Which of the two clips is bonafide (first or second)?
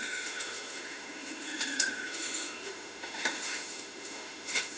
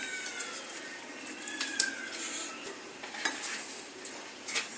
second